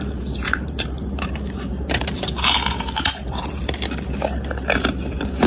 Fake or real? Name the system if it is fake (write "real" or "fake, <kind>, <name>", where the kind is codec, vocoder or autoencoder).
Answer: fake, vocoder, BigVGAN v2